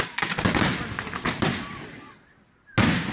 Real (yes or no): yes